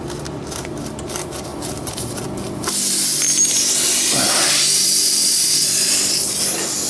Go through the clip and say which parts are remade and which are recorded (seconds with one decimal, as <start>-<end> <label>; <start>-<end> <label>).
0.0-5.2 recorded; 5.2-5.9 remade; 5.9-6.9 recorded